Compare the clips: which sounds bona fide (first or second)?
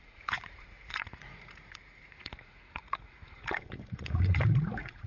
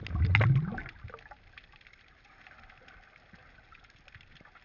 second